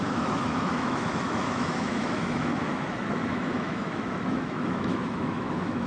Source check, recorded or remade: remade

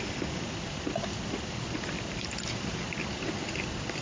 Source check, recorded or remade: recorded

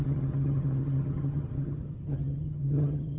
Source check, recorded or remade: remade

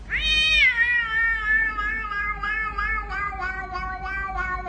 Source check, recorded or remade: recorded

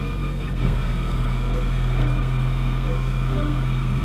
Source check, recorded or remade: remade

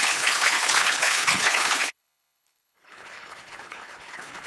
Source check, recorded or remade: remade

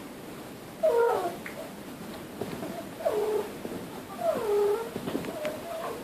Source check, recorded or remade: recorded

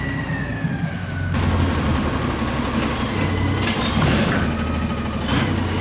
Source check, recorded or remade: recorded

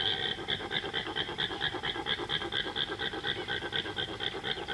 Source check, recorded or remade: recorded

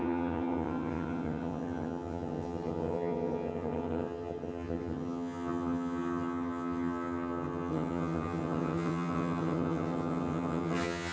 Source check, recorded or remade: remade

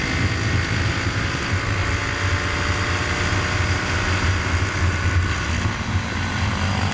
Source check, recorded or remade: recorded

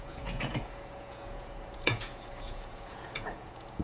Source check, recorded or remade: remade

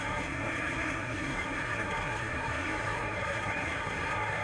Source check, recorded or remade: remade